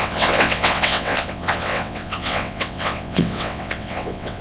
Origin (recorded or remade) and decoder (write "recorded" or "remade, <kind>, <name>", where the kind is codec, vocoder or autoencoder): remade, vocoder, WaveNeXt